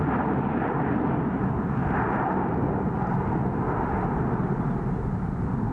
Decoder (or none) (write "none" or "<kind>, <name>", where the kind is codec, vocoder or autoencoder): none